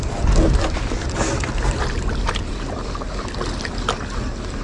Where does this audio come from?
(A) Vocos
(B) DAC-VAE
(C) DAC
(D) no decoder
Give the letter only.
D